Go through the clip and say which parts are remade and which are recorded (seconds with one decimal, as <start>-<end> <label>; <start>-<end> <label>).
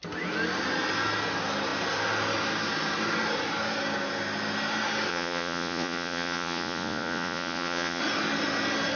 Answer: 0.0-5.1 recorded; 5.1-8.0 remade; 8.0-9.0 recorded